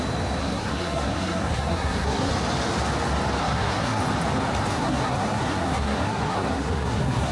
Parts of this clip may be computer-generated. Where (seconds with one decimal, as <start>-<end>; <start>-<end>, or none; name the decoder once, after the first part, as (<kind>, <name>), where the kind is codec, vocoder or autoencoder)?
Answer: 0.4-2.3 (codec, SNAC); 3.4-4.0; 4.7-7.3